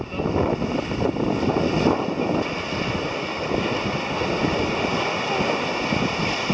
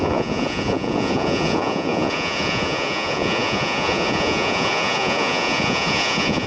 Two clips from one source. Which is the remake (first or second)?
second